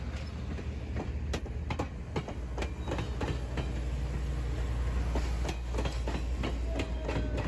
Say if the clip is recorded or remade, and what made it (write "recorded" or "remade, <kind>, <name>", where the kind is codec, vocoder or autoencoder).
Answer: recorded